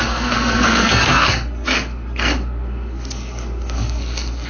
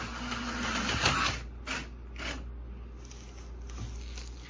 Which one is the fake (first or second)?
first